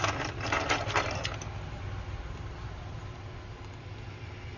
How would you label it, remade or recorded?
recorded